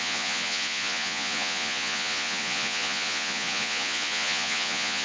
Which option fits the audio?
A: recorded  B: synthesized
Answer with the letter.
B